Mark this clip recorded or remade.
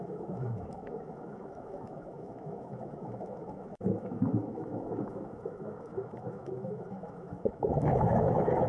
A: remade